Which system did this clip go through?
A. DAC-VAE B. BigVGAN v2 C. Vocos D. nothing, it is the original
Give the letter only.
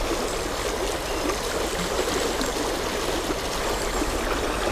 D